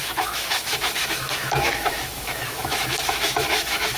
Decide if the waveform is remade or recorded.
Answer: remade